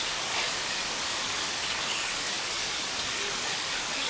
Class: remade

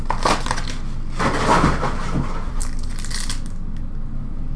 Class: recorded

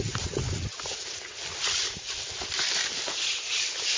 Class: recorded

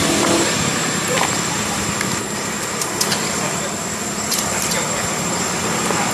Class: remade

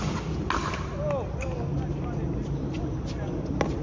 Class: recorded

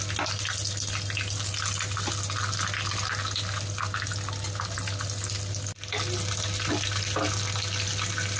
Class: recorded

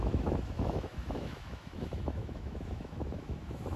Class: remade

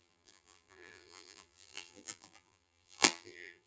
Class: remade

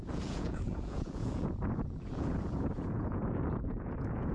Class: remade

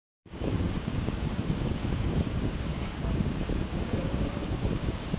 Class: remade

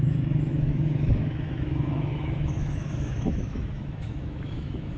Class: remade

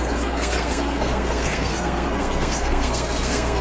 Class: remade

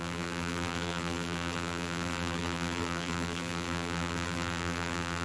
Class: remade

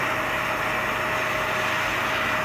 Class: recorded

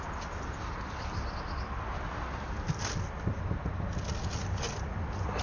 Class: recorded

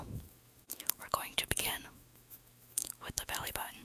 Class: remade